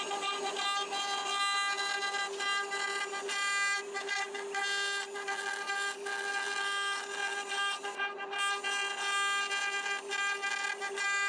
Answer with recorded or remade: recorded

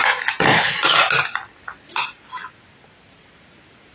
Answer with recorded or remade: recorded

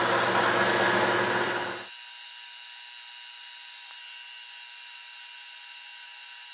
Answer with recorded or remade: recorded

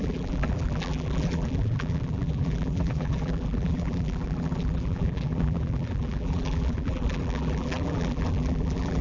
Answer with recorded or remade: remade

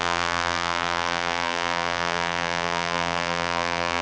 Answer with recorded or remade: remade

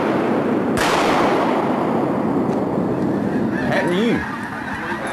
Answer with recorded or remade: recorded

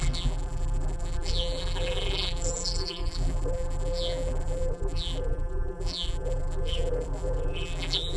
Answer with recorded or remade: remade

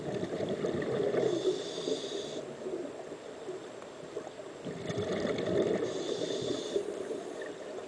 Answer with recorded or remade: recorded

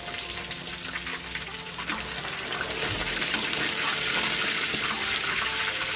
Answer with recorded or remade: recorded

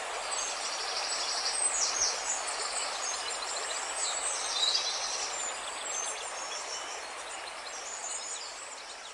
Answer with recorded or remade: recorded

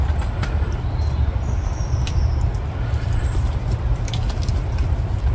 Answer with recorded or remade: recorded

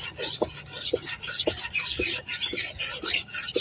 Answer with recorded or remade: recorded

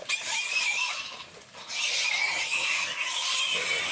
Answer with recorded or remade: remade